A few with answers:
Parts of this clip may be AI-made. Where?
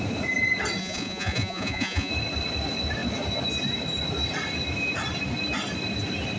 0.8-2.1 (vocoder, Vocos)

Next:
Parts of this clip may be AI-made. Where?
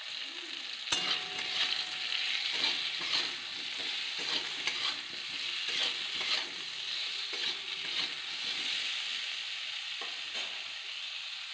none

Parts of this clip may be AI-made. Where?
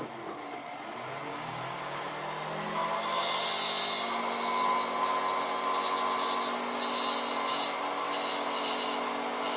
1.3-2.1 (codec, DAC)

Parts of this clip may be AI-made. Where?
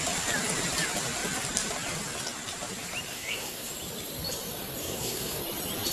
3.1-3.7 (codec, SNAC); 4.8-5.4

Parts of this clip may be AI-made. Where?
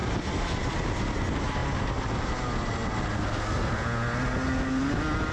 none